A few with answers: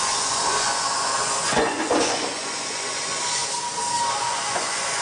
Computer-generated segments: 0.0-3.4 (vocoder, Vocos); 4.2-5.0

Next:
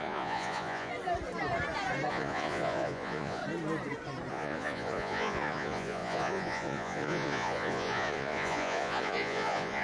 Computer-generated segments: 0.0-0.9 (vocoder, Vocos); 2.1-3.4; 4.3-9.8